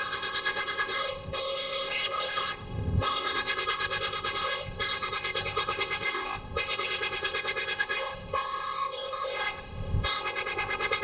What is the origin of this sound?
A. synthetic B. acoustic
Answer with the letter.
A